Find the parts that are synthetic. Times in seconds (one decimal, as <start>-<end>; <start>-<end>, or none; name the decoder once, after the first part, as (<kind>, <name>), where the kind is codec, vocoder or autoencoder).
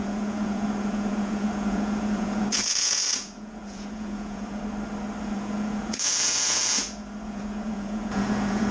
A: 0.0-4.6 (vocoder, Vocos); 5.2-8.7